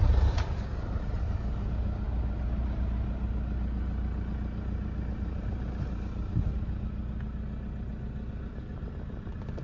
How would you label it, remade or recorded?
recorded